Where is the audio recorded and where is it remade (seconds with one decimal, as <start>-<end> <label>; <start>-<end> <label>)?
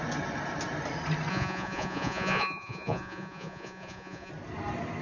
0.0-1.3 recorded; 1.3-4.3 remade; 4.3-5.0 recorded